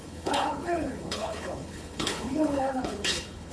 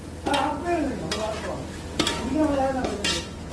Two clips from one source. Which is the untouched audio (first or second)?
second